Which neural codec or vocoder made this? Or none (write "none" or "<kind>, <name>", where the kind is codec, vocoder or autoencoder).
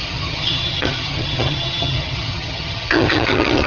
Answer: vocoder, HiFi-GAN